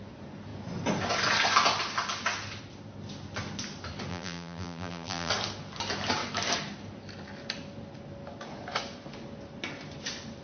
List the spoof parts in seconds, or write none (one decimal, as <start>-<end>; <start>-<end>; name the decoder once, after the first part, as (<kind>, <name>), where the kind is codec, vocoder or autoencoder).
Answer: 4.1-5.3 (vocoder, BigVGAN v2)